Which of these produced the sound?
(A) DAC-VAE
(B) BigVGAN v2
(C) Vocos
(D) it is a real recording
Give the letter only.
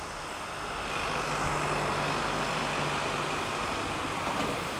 D